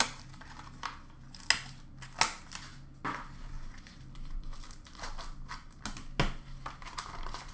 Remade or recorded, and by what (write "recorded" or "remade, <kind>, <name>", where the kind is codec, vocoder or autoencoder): recorded